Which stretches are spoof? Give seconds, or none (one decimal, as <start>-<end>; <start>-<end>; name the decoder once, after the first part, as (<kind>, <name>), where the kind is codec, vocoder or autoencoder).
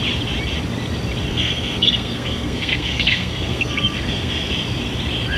1.3-4.5 (codec, SNAC)